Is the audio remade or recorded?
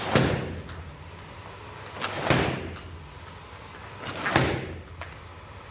recorded